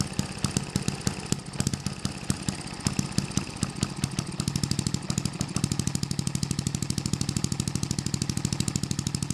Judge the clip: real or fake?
real